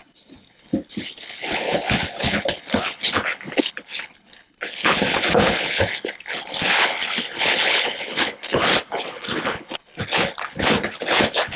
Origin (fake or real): fake